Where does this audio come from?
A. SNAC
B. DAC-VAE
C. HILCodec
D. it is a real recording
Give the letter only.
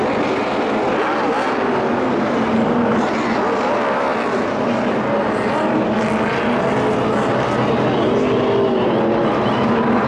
D